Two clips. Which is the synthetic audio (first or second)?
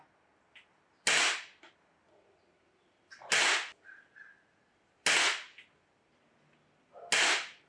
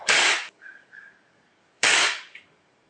second